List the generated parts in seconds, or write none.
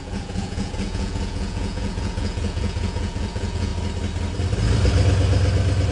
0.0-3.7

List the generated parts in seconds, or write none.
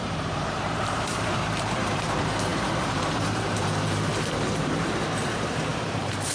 0.0-6.3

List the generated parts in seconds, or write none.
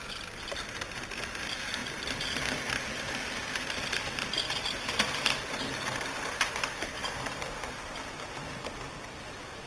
1.8-3.6; 7.0-7.7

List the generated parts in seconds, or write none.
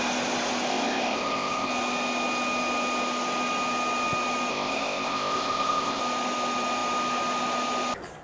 0.7-1.7; 4.5-6.0